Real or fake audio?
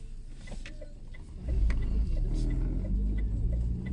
real